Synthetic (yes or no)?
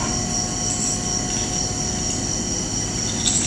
no